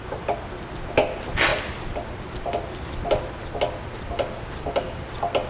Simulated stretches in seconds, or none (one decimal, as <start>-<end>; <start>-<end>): none